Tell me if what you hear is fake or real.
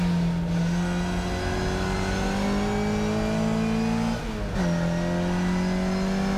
real